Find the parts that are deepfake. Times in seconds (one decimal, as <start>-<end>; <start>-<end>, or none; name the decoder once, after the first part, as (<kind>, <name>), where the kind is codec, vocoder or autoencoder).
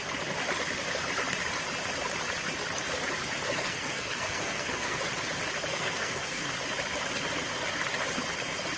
3.4-5.0 (codec, SNAC); 5.7-6.5